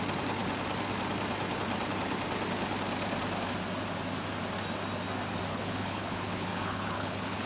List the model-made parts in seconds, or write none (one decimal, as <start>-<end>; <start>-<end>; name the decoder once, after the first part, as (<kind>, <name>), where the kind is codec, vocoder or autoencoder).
5.5-7.5 (codec, HILCodec)